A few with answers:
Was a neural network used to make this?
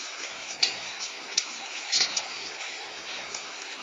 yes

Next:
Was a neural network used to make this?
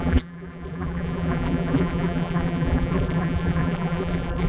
yes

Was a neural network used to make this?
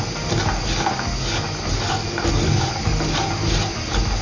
no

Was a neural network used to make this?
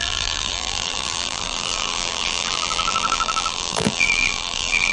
yes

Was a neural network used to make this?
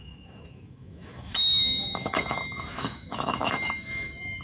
yes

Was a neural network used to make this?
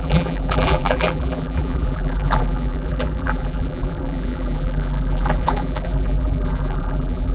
yes